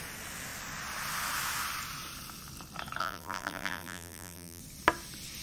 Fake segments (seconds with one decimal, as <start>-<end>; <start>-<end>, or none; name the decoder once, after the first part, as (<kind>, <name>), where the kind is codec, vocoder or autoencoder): 3.0-4.6 (vocoder, BigVGAN v2)